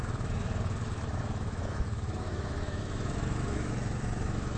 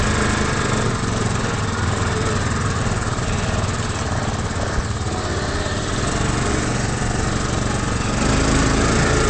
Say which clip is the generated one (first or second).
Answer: first